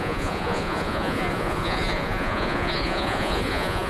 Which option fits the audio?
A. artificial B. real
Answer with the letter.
A